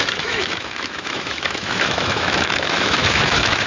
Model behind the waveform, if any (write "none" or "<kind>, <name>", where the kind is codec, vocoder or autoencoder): autoencoder, DAC-VAE